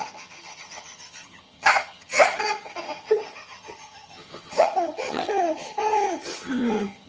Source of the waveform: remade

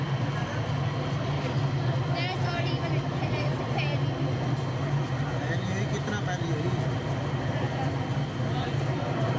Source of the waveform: recorded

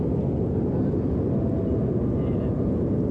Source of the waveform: recorded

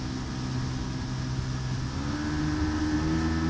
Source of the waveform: recorded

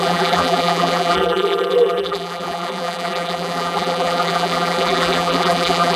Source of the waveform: remade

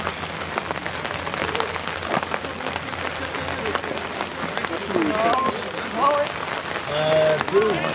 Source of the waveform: recorded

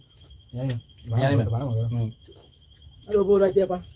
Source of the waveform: remade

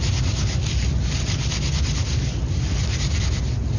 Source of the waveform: recorded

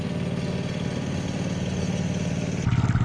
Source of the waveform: recorded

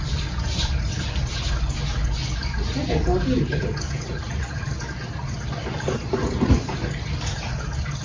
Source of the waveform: recorded